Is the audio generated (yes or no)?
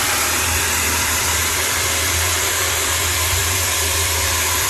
yes